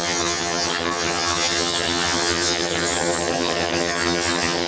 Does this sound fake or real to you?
fake